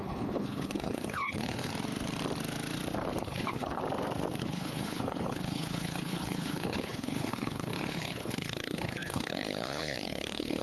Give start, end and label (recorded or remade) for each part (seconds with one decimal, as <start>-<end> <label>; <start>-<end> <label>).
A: 0.0-1.7 remade; 1.7-3.2 recorded; 3.2-3.8 remade; 3.8-4.4 recorded; 4.4-10.6 remade